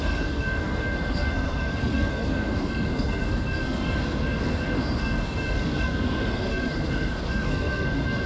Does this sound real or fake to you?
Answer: fake